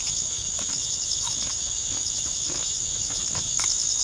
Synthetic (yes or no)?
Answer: yes